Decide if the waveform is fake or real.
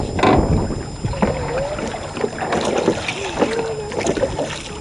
real